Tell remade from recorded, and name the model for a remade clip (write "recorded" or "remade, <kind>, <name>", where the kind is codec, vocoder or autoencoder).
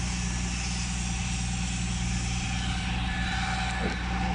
recorded